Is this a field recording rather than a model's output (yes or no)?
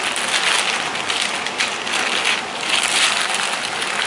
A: yes